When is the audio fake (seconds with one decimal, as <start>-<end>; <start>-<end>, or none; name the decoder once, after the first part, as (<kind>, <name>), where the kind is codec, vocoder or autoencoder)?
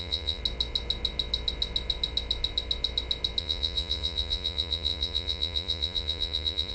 0.0-0.4 (vocoder, Vocos); 3.4-6.7